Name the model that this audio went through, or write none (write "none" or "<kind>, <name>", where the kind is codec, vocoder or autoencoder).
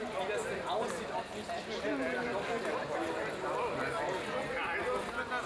none